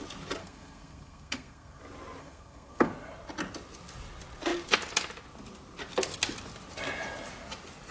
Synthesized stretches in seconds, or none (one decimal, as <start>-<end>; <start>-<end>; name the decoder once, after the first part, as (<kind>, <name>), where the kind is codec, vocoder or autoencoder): 0.4-1.8 (codec, SNAC); 2.2-2.9